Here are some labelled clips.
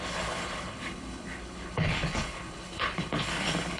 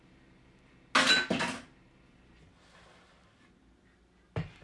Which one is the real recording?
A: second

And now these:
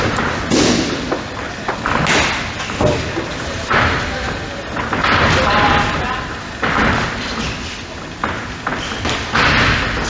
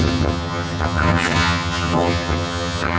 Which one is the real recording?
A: first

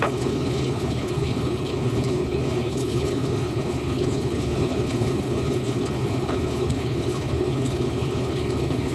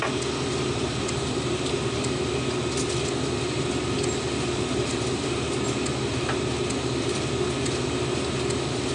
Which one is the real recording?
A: second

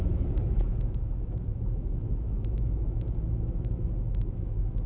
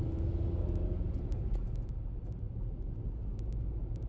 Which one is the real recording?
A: second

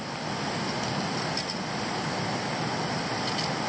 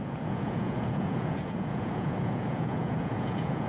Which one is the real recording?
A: first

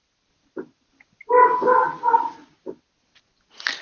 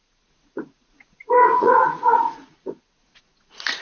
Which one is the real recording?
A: first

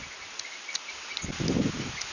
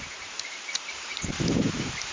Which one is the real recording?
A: first